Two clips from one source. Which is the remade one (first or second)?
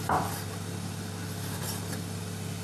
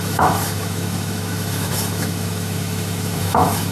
second